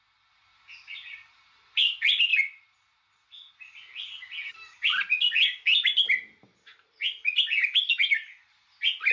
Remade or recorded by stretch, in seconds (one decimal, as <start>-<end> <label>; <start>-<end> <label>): 0.0-9.1 recorded